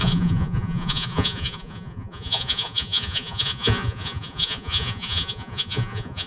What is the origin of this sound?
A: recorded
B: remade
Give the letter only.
B